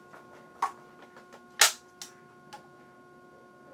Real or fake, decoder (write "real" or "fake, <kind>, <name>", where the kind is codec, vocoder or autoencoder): real